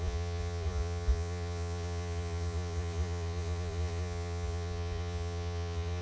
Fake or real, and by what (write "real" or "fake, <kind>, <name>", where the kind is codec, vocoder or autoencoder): fake, vocoder, Vocos